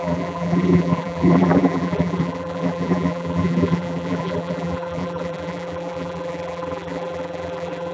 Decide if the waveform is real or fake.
fake